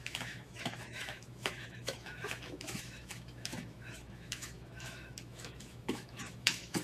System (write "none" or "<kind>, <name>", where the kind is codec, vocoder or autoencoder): autoencoder, DAC-VAE